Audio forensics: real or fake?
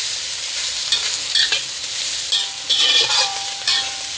fake